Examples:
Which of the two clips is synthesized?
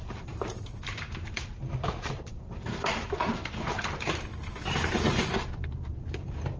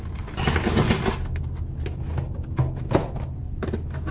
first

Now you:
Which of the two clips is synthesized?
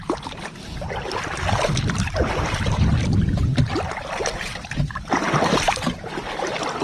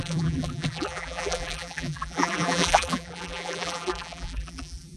second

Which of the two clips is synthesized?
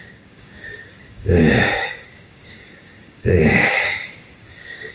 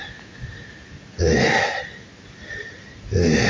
first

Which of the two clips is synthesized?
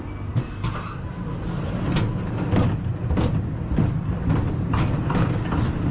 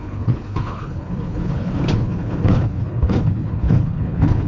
second